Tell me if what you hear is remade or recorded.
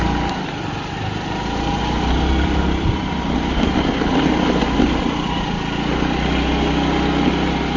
recorded